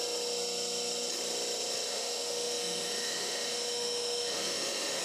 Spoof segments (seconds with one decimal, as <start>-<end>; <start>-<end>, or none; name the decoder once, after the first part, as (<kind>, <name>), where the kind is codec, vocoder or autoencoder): 1.9-5.0 (autoencoder, DAC-VAE)